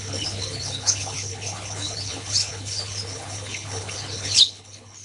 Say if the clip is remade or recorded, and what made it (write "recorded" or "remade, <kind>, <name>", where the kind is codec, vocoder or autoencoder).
remade, codec, HILCodec